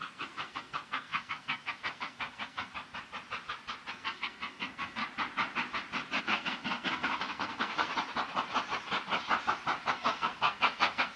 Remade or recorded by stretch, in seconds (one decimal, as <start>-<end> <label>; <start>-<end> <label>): 0.0-2.7 remade; 2.7-3.9 recorded; 3.9-5.0 remade; 5.0-6.2 recorded; 6.2-7.9 remade; 7.9-9.9 recorded; 9.9-11.2 remade